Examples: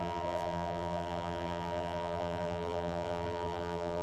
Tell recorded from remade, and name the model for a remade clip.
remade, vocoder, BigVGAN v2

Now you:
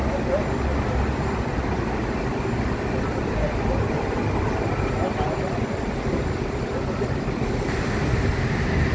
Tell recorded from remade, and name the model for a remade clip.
recorded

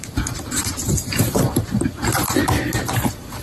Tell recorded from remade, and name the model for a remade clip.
remade, vocoder, BigVGAN v2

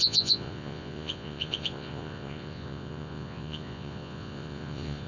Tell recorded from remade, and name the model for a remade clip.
remade, vocoder, Vocos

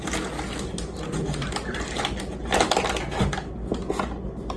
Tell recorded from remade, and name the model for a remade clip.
recorded